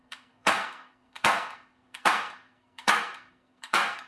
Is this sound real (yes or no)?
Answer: no